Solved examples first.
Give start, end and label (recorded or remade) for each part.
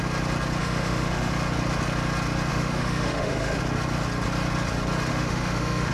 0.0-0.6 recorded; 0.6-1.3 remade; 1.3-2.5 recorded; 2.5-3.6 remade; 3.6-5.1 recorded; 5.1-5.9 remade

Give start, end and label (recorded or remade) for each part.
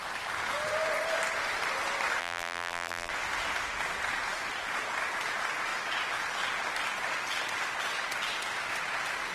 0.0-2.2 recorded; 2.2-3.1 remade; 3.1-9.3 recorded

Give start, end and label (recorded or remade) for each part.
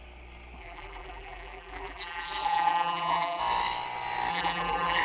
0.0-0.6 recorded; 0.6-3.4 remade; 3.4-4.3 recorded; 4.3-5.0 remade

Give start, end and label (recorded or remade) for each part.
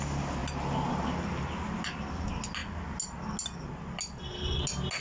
0.0-5.0 recorded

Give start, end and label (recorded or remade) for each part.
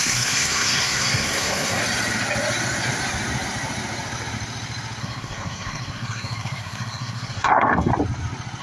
0.0-1.8 remade; 1.8-5.0 recorded; 5.0-7.9 remade; 7.9-8.6 recorded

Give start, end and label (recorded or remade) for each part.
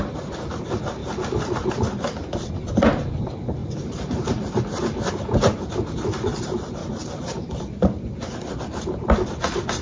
0.0-3.6 recorded; 3.6-4.6 remade; 4.6-6.8 recorded; 6.8-7.6 remade; 7.6-9.8 recorded